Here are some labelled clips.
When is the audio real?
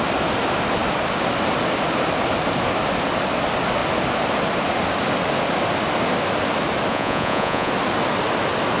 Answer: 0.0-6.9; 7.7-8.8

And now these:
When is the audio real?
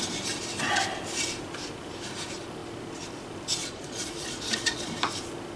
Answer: 0.0-3.6; 4.9-5.6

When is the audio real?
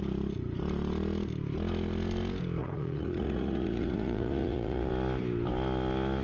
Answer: 0.0-2.6; 4.9-6.2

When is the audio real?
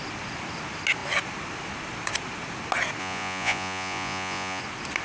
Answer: 0.0-3.0; 4.6-5.0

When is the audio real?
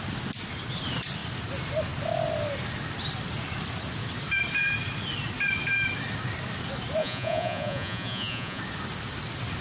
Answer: 0.0-7.0; 8.6-9.6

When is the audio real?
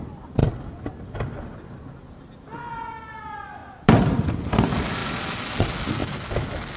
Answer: 0.0-6.8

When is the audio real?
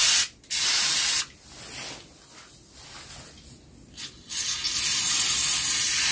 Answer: 0.0-6.1